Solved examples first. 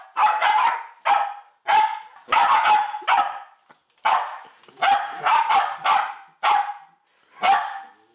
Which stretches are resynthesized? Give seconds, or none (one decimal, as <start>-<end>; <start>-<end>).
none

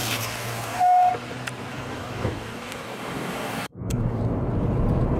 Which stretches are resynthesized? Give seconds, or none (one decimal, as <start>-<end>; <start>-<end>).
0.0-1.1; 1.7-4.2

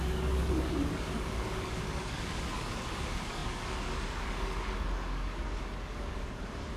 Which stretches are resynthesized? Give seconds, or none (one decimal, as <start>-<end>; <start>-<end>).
0.0-6.8

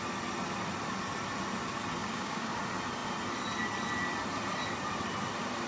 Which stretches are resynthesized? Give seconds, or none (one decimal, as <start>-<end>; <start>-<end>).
2.0-2.6

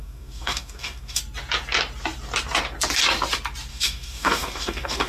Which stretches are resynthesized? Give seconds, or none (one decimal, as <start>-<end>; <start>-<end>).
0.0-1.2; 3.7-5.1

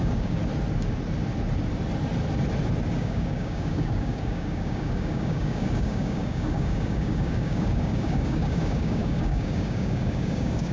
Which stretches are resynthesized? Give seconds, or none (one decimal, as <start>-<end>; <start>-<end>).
0.0-0.4; 2.9-10.7

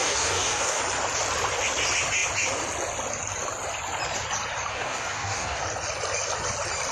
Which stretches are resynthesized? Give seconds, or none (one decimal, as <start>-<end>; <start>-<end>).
0.0-0.8; 4.7-5.6

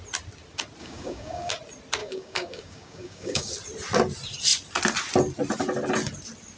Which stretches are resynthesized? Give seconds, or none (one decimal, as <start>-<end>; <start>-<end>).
0.8-1.5; 2.0-3.5